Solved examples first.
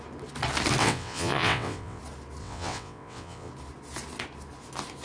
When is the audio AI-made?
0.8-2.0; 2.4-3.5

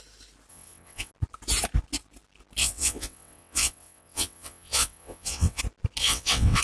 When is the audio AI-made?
0.5-1.1; 2.6-5.6; 6.0-6.6